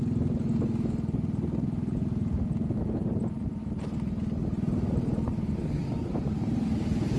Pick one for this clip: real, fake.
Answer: real